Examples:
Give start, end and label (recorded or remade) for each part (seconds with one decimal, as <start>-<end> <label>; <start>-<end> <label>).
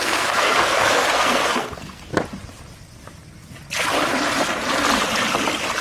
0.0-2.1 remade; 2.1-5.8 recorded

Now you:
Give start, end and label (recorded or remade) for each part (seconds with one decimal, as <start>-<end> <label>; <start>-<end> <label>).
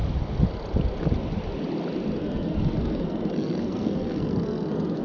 0.0-2.2 recorded; 2.2-5.0 remade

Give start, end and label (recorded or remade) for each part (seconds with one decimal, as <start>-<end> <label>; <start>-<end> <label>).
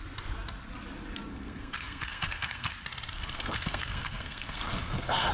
0.0-1.3 recorded; 1.3-2.7 remade; 2.7-3.1 recorded; 3.1-5.3 remade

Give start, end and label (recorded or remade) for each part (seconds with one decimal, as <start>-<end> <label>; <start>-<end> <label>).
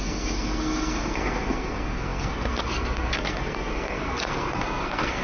0.0-5.2 remade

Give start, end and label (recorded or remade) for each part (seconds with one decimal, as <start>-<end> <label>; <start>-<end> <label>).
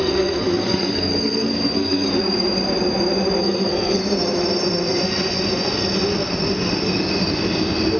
0.0-2.1 remade; 2.1-3.4 recorded; 3.4-4.0 remade; 4.0-8.0 recorded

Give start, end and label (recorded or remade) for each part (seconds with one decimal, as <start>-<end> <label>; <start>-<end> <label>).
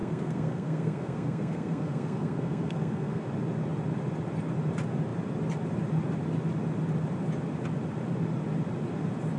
0.0-3.2 remade; 3.2-9.4 recorded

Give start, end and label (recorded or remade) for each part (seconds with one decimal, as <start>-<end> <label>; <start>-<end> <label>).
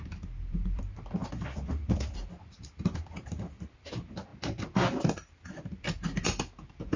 0.0-7.0 recorded